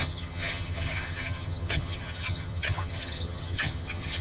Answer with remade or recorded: remade